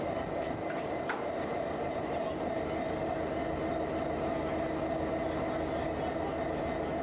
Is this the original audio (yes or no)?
yes